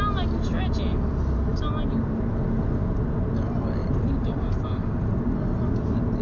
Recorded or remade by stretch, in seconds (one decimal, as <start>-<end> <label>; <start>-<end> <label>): 0.0-3.8 recorded; 3.8-5.1 remade; 5.1-6.2 recorded